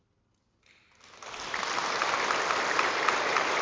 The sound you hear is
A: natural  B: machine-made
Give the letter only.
A